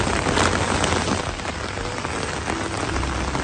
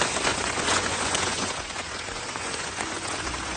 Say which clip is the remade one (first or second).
second